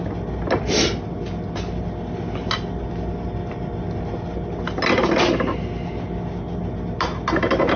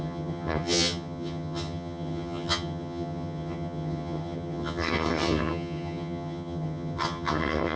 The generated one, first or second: second